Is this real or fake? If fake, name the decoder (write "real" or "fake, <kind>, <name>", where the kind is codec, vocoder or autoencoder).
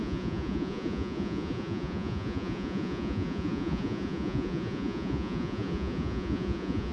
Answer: fake, vocoder, Vocos